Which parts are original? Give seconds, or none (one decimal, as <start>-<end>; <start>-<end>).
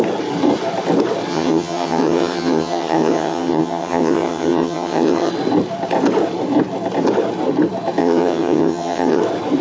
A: 0.0-1.3; 5.3-8.0; 9.2-9.6